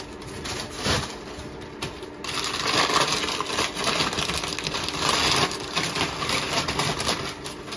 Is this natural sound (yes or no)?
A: yes